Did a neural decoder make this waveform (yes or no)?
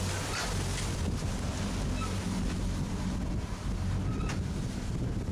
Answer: no